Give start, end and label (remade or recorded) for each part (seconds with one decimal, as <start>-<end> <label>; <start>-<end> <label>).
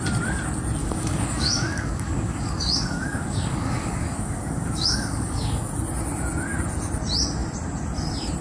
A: 0.0-0.8 recorded; 0.8-5.7 remade; 5.7-8.4 recorded